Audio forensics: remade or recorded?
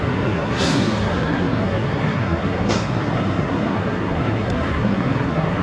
remade